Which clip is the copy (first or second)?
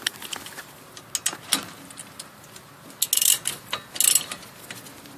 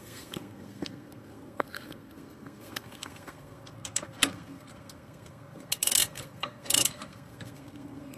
second